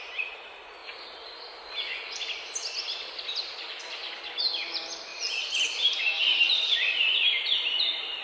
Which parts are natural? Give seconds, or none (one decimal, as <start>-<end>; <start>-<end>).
0.0-5.1